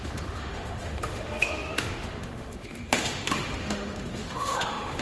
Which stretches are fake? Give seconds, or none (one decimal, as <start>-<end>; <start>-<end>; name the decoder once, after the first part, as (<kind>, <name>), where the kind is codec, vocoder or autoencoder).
0.0-5.0 (autoencoder, DAC-VAE)

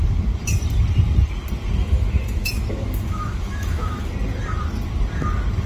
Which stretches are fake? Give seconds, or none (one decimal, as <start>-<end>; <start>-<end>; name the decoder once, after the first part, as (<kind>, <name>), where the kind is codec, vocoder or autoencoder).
1.8-4.1 (autoencoder, DAC-VAE)

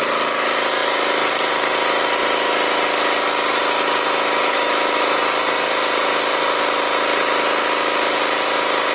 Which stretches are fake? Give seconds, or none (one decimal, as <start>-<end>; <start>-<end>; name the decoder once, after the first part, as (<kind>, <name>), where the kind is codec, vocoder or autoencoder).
4.4-5.2 (autoencoder, DAC-VAE)

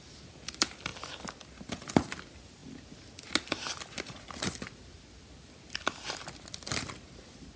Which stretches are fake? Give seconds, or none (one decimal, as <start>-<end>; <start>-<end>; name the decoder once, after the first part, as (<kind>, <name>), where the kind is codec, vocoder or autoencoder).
none

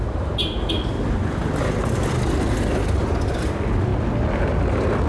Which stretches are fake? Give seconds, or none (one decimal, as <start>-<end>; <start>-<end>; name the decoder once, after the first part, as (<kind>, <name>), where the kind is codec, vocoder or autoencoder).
none

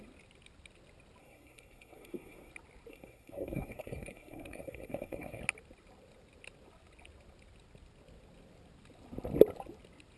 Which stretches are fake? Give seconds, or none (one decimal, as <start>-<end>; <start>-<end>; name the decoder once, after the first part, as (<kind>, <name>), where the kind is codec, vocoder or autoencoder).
1.2-2.5 (codec, SNAC); 2.9-5.4